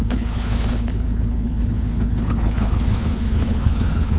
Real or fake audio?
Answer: fake